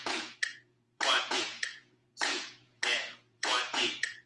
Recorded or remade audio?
remade